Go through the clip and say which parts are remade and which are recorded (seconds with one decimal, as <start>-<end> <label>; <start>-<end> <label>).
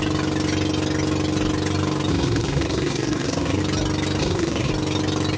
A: 0.0-2.1 recorded; 2.1-3.6 remade; 3.6-4.2 recorded; 4.2-4.7 remade; 4.7-5.4 recorded